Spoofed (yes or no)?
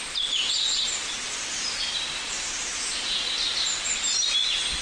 no